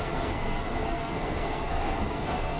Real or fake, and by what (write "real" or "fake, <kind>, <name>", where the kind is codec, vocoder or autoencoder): fake, codec, SNAC